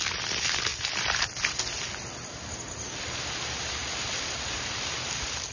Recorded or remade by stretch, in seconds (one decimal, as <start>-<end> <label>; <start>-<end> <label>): 0.0-0.7 remade; 0.7-3.0 recorded; 3.0-5.5 remade